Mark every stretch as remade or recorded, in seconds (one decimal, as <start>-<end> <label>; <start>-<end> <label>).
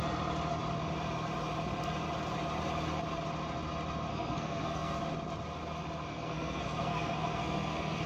0.0-4.1 recorded; 4.1-5.0 remade; 5.0-6.1 recorded; 6.1-8.1 remade